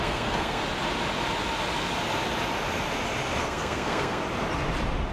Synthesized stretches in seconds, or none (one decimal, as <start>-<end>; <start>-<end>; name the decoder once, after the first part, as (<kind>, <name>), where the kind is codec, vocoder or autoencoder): 0.0-0.6 (codec, SNAC); 3.4-4.2